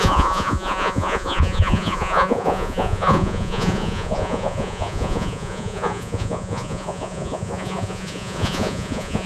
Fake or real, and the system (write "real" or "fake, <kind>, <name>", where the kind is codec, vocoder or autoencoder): fake, vocoder, Vocos